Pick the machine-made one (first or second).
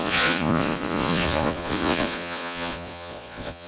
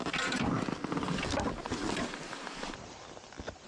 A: first